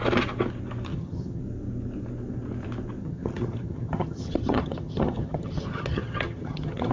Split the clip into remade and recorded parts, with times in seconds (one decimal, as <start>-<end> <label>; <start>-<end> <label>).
0.0-0.9 recorded; 0.9-1.4 remade; 1.4-3.0 recorded; 3.0-6.9 remade